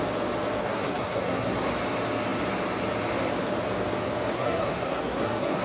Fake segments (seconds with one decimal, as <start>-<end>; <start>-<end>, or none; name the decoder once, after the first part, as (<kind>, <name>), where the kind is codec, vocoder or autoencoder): 0.6-1.7 (codec, SNAC); 4.3-5.6